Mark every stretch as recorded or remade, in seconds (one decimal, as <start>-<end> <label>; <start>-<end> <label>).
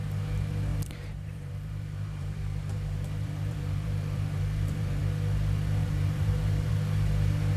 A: 0.0-0.7 recorded; 0.7-5.0 remade; 5.0-5.8 recorded; 5.8-6.7 remade; 6.7-7.6 recorded